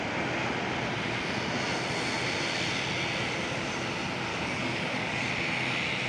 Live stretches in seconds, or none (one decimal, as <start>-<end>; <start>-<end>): 0.0-4.3; 5.3-6.1